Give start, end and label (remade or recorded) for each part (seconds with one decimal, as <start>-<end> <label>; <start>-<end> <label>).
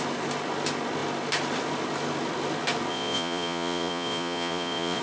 0.0-2.9 recorded; 2.9-5.0 remade